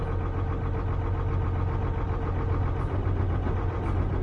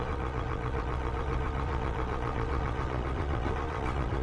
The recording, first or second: first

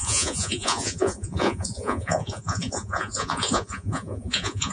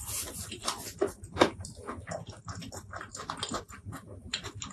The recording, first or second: second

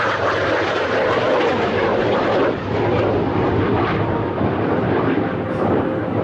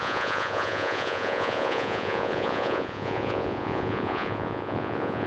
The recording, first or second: first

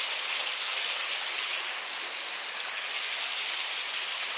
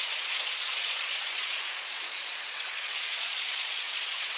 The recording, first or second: first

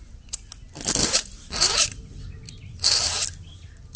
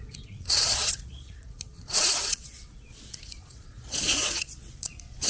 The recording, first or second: first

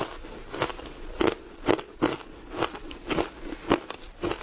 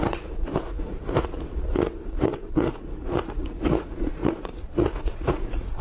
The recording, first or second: first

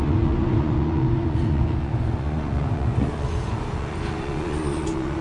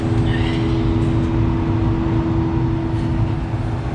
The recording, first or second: second